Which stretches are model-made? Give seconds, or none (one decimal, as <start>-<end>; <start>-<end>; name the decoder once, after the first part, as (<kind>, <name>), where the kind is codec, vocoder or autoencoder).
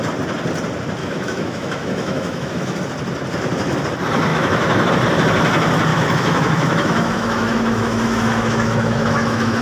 1.0-2.8 (autoencoder, DAC-VAE); 4.3-4.9; 5.9-9.6